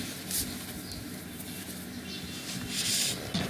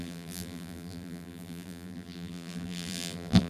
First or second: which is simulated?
second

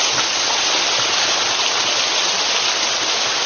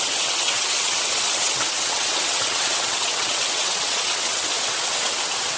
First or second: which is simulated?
second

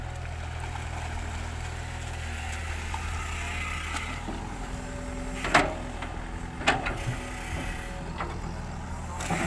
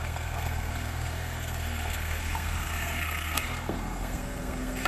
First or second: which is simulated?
second